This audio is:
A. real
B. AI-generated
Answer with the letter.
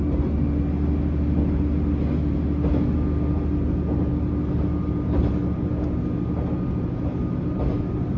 A